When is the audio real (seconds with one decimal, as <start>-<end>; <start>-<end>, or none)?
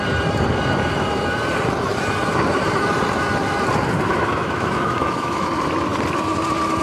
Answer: 0.0-4.1; 5.5-6.8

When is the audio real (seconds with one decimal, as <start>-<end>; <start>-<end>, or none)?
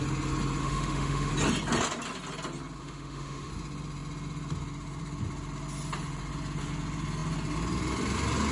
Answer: 0.0-0.6; 1.3-2.8; 3.5-8.5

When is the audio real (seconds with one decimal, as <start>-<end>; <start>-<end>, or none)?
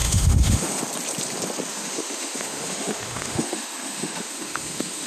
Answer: 0.8-1.7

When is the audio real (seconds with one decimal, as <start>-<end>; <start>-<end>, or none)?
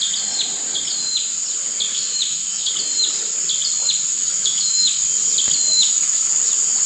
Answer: 0.0-1.9; 2.7-4.1; 5.0-5.7; 6.3-6.9